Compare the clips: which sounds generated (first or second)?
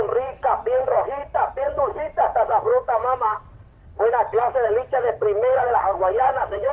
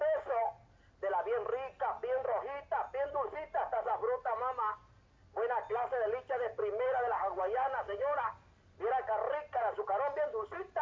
first